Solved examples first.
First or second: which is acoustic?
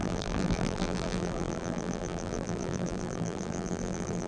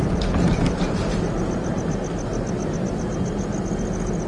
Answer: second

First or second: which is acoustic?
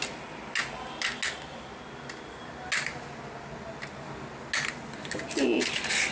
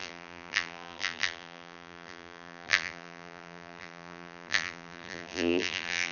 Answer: first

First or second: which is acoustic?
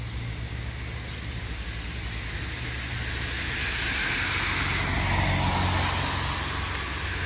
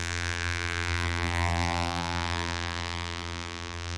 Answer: first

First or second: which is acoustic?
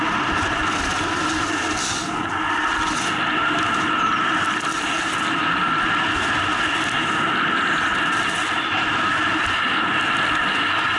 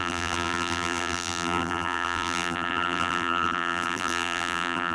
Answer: first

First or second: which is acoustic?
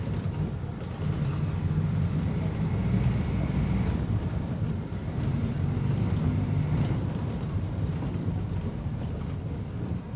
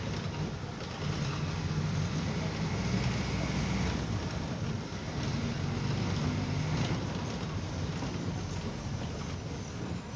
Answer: second